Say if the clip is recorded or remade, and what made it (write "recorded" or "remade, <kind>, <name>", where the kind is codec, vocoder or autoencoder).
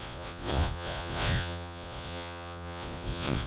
remade, vocoder, Vocos